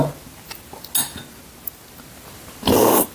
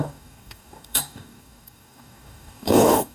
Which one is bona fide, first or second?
first